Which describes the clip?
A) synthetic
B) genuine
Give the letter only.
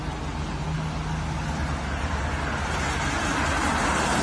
B